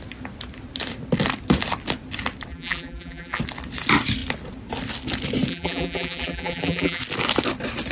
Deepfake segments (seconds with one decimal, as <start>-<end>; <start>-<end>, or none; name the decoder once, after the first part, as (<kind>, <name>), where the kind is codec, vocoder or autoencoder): 2.5-3.4 (vocoder, BigVGAN v2); 5.5-7.0